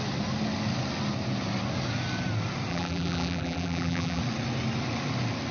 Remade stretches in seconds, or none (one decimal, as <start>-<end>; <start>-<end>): 2.7-4.2